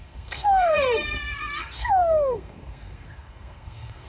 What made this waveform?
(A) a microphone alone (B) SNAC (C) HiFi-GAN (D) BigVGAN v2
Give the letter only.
B